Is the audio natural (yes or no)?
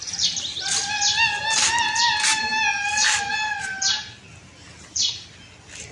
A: yes